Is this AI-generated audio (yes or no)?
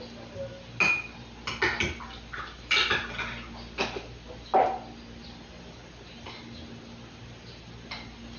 no